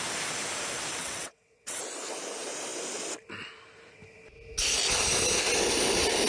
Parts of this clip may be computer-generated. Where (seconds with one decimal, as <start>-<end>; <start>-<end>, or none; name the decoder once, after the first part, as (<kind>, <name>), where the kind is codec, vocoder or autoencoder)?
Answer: 1.0-1.8 (vocoder, WaveNeXt)